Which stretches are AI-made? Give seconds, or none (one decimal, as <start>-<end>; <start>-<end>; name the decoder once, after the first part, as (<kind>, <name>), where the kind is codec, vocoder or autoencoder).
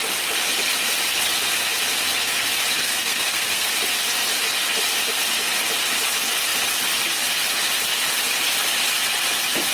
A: 2.8-3.7 (codec, SNAC)